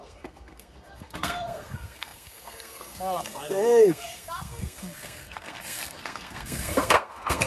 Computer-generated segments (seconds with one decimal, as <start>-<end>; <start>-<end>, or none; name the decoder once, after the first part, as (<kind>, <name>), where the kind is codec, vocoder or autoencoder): 0.0-7.5 (codec, SNAC)

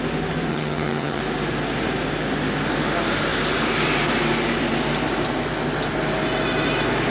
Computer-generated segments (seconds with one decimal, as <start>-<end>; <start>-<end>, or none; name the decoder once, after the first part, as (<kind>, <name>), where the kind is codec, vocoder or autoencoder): 0.5-1.2 (vocoder, HiFi-GAN)

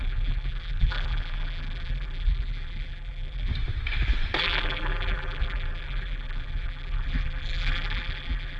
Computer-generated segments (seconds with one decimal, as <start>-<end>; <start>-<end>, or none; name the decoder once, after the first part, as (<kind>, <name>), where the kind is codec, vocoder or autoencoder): 0.0-3.5 (vocoder, BigVGAN v2); 4.4-8.6

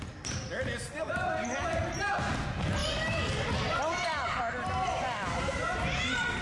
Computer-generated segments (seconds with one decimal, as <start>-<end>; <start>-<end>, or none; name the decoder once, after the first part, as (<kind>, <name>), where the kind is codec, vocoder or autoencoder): none